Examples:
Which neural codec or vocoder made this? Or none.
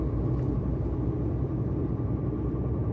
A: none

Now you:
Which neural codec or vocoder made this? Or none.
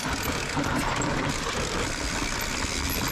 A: none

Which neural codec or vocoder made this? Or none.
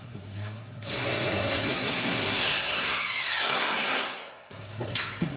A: codec, SNAC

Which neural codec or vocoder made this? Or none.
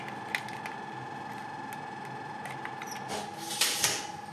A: none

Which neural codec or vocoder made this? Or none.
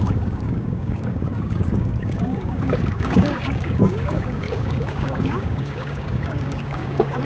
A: codec, DAC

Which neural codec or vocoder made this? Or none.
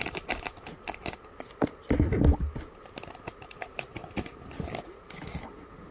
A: none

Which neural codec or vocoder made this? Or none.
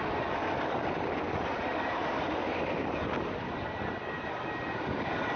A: none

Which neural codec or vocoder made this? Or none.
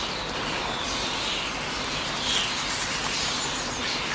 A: none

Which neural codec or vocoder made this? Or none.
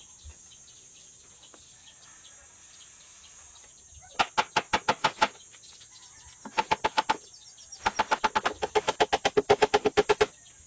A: none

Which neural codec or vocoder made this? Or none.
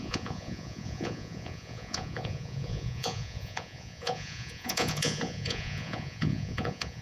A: vocoder, Vocos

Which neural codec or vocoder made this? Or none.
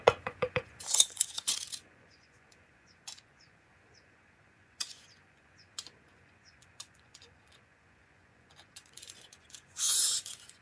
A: vocoder, Vocos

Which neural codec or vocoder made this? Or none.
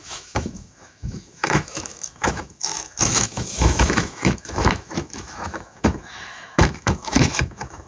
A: autoencoder, DAC-VAE